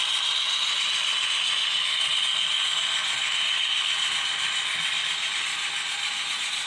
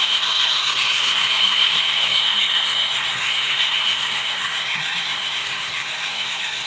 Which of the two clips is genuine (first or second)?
first